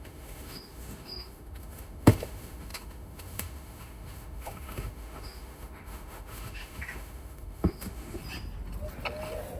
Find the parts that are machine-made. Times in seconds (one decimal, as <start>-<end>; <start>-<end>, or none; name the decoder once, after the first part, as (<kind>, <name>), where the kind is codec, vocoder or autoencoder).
0.0-8.2 (autoencoder, DAC-VAE)